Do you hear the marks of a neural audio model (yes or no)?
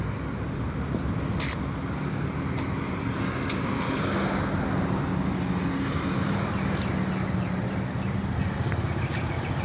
no